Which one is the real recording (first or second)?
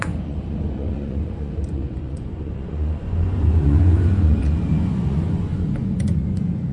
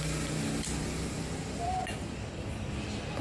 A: second